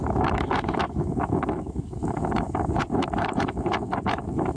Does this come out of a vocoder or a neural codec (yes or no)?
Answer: yes